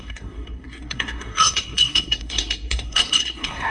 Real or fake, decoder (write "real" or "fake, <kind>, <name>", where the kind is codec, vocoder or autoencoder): fake, codec, SNAC